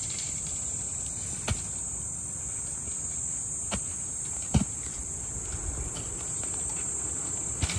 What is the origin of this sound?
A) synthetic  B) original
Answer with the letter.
B